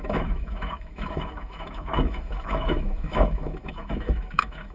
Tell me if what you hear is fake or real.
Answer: fake